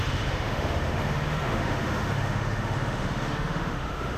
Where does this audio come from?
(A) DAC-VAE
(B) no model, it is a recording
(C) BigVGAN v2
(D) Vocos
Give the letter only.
A